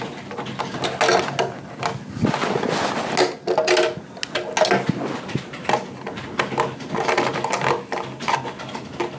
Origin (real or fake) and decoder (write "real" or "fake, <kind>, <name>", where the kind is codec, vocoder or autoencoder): real